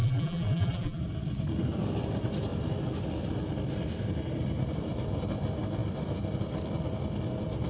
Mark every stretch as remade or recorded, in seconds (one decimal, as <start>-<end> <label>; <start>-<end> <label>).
0.0-1.0 remade; 1.0-7.7 recorded